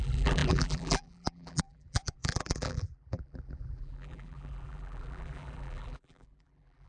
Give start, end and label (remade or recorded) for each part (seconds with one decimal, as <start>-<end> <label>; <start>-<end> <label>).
0.0-6.9 remade

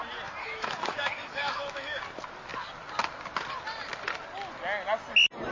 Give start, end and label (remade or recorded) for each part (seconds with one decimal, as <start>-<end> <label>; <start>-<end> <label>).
0.0-0.4 recorded; 0.4-2.0 remade; 2.0-5.5 recorded

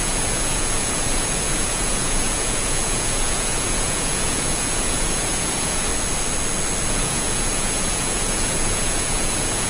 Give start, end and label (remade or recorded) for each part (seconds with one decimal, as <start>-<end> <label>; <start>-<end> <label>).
0.0-5.9 remade; 5.9-6.9 recorded; 6.9-9.7 remade

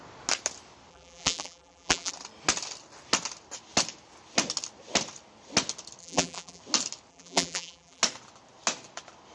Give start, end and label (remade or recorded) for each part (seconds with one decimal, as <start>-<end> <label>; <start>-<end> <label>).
0.0-0.9 recorded; 0.9-2.1 remade; 2.1-6.0 recorded; 6.0-6.6 remade; 6.6-7.1 recorded; 7.1-8.0 remade; 8.0-9.3 recorded

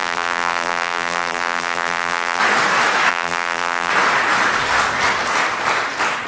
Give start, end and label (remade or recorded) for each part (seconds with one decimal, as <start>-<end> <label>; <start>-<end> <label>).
0.0-2.4 remade; 2.4-3.1 recorded; 3.1-3.9 remade; 3.9-6.3 recorded